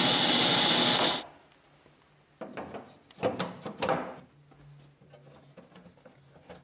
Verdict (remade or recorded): recorded